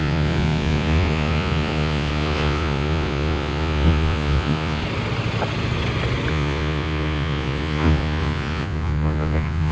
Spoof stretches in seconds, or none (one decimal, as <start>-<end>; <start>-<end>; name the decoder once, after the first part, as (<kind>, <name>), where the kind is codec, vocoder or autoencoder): 0.0-4.8 (vocoder, Vocos); 6.3-9.7